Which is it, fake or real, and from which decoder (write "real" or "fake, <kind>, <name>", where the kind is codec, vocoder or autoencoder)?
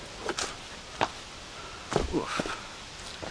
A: real